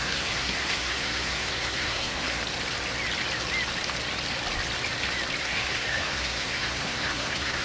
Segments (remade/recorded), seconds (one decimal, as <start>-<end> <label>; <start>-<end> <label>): 0.0-2.4 remade; 2.4-5.4 recorded; 5.4-7.6 remade